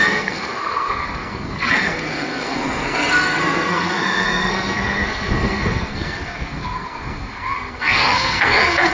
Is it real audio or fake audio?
fake